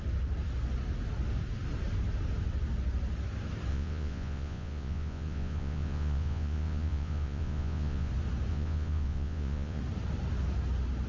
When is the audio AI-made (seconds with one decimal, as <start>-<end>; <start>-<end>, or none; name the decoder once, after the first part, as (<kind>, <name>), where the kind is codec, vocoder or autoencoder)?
3.7-8.1 (vocoder, Vocos); 8.5-9.8